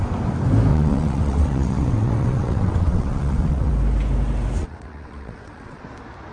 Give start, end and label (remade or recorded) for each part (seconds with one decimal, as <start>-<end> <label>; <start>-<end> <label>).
0.0-0.7 recorded; 0.7-3.7 remade; 3.7-4.6 recorded; 4.6-5.8 remade; 5.8-6.3 recorded